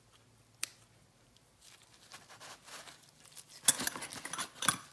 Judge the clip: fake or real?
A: real